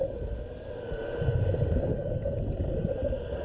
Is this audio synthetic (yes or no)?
no